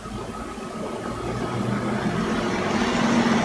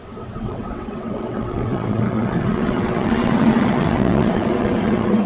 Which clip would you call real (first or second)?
first